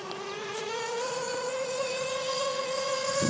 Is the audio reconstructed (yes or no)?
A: yes